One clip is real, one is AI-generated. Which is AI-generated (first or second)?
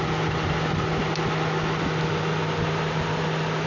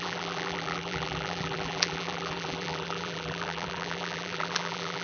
second